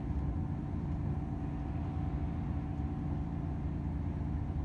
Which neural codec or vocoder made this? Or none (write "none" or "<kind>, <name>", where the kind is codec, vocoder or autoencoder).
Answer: none